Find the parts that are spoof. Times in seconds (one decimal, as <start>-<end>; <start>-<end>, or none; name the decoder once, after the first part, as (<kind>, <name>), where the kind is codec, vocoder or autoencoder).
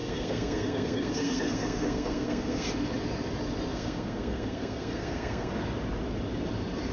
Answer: 0.0-2.7 (codec, SNAC); 3.7-5.5